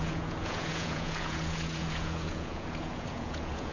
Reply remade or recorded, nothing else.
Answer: remade